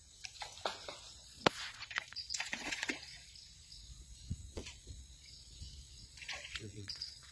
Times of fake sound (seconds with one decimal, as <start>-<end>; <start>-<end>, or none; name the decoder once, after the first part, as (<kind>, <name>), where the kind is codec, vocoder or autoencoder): 0.9-3.3 (vocoder, Vocos); 3.7-7.3